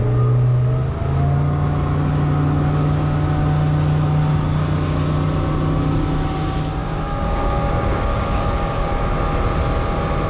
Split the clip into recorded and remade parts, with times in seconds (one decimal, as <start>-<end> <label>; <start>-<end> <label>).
0.0-6.8 recorded; 6.8-8.9 remade; 8.9-10.3 recorded